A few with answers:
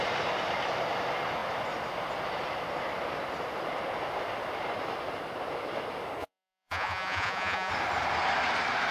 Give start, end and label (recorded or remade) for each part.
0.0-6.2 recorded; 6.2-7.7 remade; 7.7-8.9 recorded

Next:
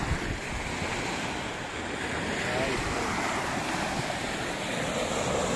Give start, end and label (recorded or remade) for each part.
0.0-0.8 remade; 0.8-3.6 recorded; 3.6-4.4 remade; 4.4-5.6 recorded